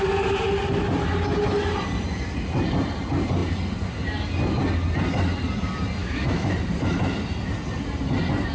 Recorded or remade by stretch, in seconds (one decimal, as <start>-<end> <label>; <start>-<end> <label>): 0.0-6.0 recorded; 6.0-6.5 remade; 6.5-8.5 recorded